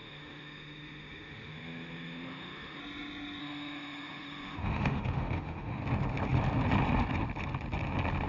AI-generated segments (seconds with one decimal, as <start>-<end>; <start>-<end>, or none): 0.0-2.8; 3.4-5.8